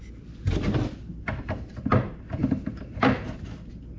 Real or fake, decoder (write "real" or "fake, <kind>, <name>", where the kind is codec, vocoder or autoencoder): real